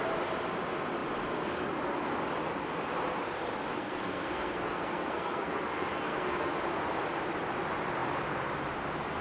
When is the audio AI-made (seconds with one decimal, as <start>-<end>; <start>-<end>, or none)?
3.7-6.5